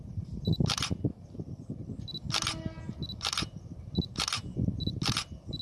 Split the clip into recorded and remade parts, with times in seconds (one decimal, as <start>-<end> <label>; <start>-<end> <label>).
0.0-5.6 recorded